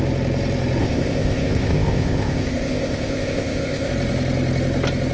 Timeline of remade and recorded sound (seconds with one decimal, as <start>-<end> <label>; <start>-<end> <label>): 0.0-0.8 recorded; 0.8-3.9 remade; 3.9-5.1 recorded